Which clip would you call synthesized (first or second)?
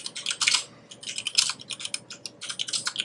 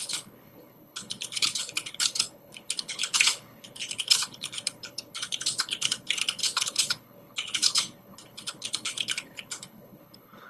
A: second